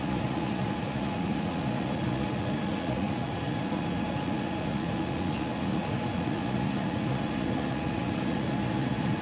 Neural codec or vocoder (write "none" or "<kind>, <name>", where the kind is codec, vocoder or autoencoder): vocoder, Vocos